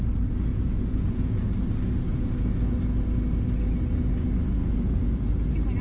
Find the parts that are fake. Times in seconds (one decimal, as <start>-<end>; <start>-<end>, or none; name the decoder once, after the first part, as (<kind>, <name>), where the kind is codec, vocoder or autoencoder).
0.5-1.5 (vocoder, Vocos); 2.1-2.8; 4.6-5.3